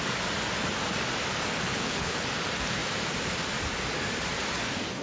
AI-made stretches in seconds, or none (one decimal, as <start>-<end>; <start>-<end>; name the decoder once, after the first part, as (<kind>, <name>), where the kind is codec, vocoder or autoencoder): 1.7-2.3 (codec, HILCodec)